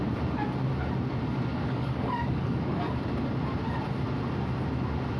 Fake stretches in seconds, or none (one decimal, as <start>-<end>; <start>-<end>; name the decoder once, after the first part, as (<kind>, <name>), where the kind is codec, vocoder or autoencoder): 1.5-2.8 (codec, DAC)